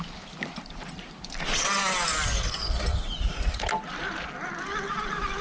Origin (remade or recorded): recorded